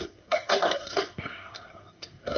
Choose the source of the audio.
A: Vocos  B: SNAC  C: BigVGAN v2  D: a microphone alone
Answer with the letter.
B